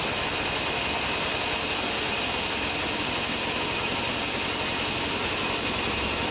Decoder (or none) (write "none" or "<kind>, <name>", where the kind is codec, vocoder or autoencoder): none